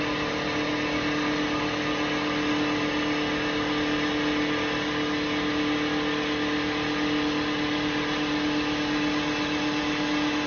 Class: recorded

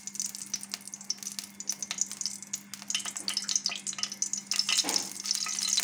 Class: recorded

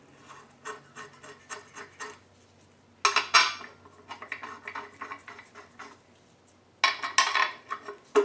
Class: recorded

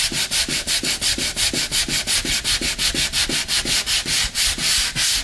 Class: recorded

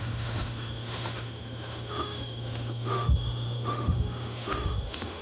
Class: remade